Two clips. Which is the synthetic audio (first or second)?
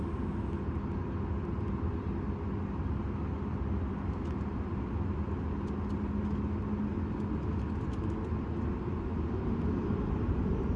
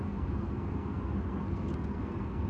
second